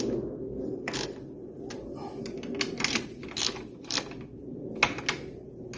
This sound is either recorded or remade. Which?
recorded